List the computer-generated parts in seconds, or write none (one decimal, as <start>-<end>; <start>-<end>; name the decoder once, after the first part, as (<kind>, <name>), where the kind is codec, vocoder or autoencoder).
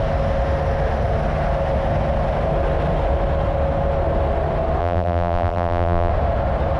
4.8-6.1 (vocoder, BigVGAN v2)